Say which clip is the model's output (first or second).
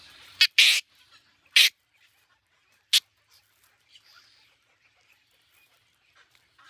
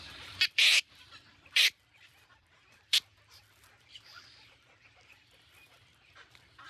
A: second